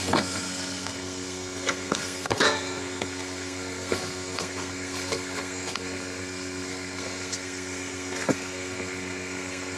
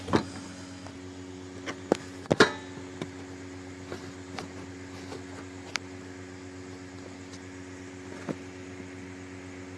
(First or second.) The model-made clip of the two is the first